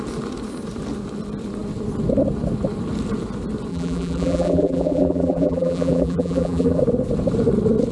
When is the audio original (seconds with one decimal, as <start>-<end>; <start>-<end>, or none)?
0.0-3.7; 6.8-7.9